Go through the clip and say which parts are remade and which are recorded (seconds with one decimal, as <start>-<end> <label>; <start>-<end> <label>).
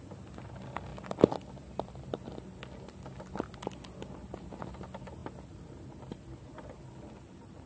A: 0.0-7.7 recorded